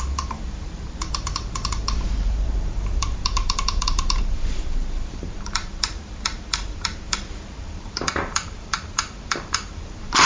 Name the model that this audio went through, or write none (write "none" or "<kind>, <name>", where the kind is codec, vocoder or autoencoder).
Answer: vocoder, BigVGAN v2